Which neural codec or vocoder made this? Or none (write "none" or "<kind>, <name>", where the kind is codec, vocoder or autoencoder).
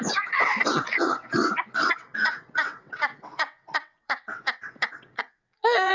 vocoder, WaveNeXt